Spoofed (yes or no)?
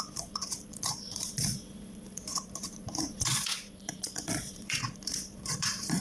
yes